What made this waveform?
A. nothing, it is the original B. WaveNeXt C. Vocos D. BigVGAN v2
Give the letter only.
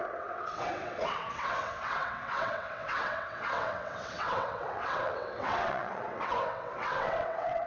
B